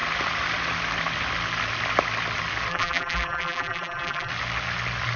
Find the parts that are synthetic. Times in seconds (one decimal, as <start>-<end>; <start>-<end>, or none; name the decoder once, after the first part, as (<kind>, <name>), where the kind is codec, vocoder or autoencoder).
2.7-4.3 (vocoder, BigVGAN v2)